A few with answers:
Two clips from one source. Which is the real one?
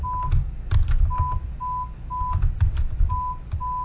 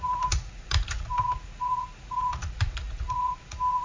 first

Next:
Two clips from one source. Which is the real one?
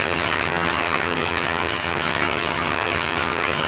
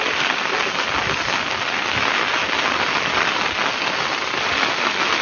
second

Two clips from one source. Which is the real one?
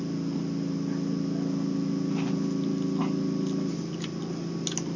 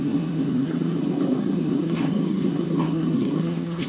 first